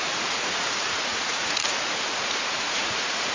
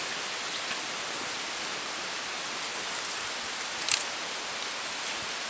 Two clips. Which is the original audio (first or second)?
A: second